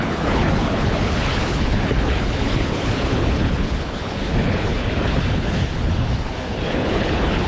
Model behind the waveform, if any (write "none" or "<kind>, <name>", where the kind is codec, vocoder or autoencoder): codec, HILCodec